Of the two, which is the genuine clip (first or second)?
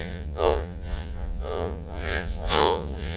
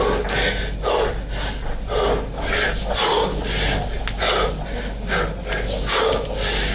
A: second